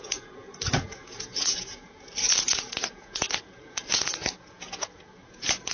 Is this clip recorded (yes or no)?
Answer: no